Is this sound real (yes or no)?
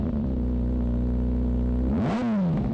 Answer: yes